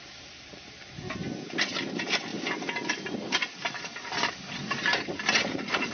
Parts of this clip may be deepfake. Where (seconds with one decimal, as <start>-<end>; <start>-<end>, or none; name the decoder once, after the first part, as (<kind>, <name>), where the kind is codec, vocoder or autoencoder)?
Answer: none

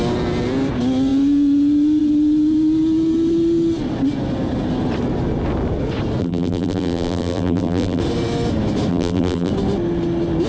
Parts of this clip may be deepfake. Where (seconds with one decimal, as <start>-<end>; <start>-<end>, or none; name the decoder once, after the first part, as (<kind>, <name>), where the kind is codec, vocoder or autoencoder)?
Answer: 6.2-8.0 (vocoder, BigVGAN v2); 8.9-9.5